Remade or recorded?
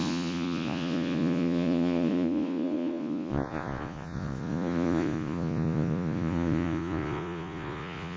remade